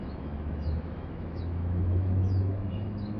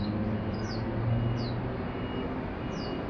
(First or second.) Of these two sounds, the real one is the second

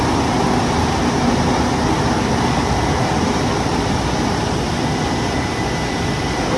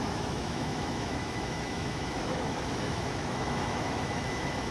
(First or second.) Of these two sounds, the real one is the first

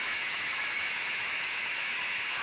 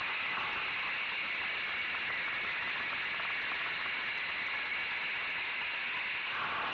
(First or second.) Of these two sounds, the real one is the second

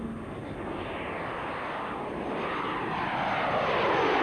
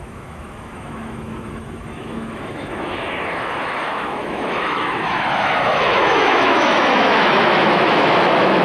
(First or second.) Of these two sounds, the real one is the first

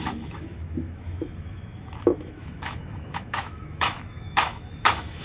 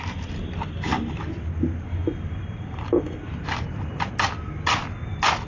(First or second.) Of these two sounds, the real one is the second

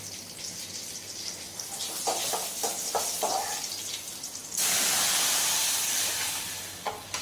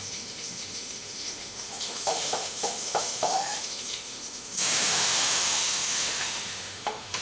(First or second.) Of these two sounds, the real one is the first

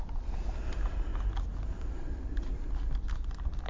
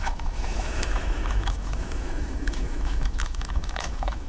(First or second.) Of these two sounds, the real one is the first